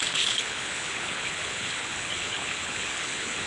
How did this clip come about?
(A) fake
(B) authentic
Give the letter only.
A